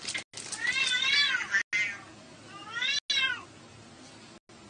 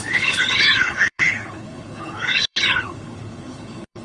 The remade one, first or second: second